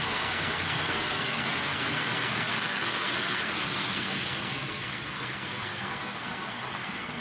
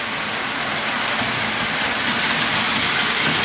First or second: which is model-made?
first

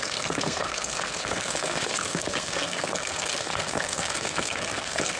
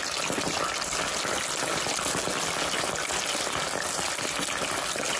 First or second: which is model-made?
first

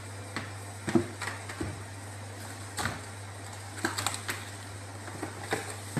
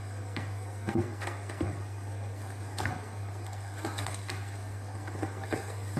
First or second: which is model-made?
second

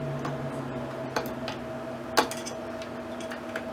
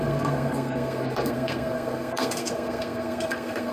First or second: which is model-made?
second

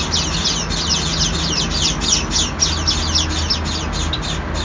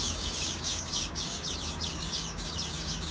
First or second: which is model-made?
second